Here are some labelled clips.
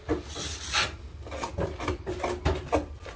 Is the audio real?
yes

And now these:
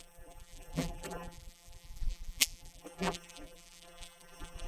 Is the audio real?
no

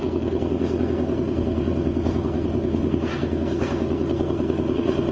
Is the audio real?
no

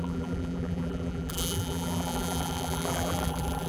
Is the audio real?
no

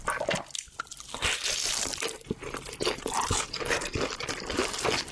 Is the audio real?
yes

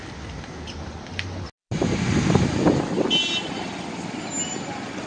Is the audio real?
yes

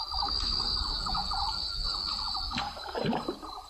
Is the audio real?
yes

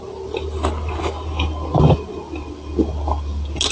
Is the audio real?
yes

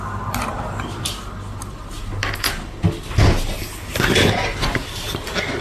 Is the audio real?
yes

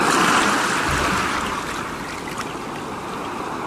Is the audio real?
yes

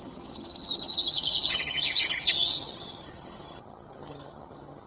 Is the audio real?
no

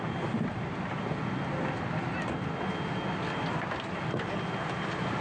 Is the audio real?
yes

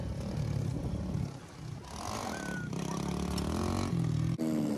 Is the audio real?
yes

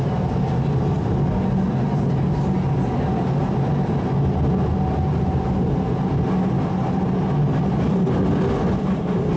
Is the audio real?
yes